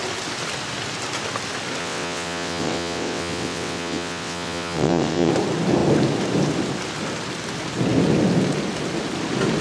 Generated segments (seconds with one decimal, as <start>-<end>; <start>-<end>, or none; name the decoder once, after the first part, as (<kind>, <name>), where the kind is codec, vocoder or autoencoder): 1.8-5.3 (vocoder, WaveNeXt)